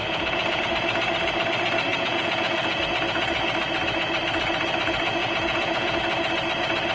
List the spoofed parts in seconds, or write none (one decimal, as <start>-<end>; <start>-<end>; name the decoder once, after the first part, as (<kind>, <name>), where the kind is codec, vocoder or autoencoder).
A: 0.0-0.6 (vocoder, Vocos); 1.9-2.8; 5.2-6.0